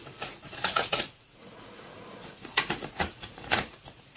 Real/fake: fake